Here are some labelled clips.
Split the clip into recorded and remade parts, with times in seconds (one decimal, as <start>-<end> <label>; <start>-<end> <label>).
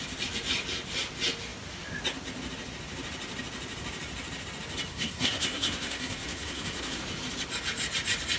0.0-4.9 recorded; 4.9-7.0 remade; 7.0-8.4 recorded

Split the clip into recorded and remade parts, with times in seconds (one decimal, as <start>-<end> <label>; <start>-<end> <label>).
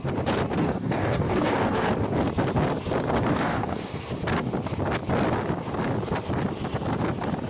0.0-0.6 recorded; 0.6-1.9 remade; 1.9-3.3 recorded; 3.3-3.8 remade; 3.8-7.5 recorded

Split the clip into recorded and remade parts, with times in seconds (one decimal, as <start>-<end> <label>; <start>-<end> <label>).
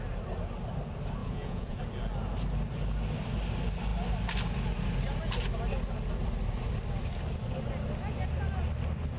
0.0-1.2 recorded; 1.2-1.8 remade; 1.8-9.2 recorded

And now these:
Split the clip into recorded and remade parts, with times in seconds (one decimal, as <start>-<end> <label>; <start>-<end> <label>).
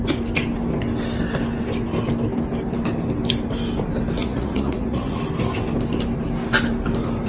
0.0-4.2 recorded; 4.2-5.2 remade; 5.2-7.3 recorded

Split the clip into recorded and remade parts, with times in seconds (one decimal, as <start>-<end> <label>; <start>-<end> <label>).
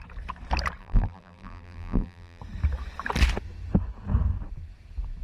0.0-0.8 recorded; 0.8-2.4 remade; 2.4-5.2 recorded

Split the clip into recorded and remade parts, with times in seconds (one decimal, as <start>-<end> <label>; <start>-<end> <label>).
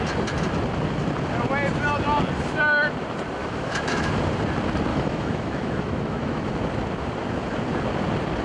0.0-3.4 recorded; 3.4-4.1 remade; 4.1-4.9 recorded; 4.9-6.5 remade; 6.5-8.4 recorded